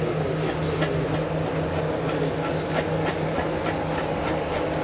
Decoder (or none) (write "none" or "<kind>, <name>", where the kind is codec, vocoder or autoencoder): none